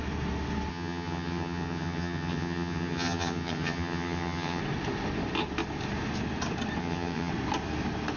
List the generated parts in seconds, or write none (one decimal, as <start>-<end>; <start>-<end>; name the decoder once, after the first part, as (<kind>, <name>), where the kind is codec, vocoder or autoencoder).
0.7-4.6 (vocoder, HiFi-GAN); 6.8-7.3